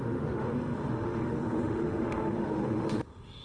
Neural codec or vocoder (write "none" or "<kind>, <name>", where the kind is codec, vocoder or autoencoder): autoencoder, DAC-VAE